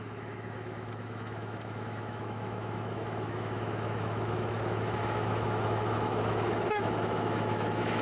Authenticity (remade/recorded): remade